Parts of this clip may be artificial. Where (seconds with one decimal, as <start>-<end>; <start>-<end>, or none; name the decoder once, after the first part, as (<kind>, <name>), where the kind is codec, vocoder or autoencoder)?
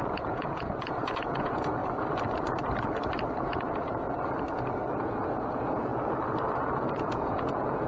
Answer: 0.0-1.8 (vocoder, Vocos); 3.4-3.9; 5.0-5.9; 6.6-7.9